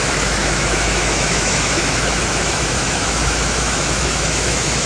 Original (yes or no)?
no